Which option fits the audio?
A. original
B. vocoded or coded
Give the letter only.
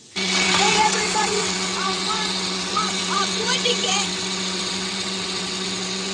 B